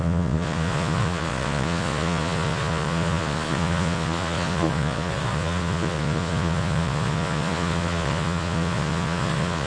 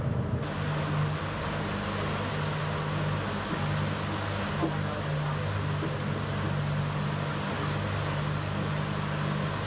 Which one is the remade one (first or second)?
first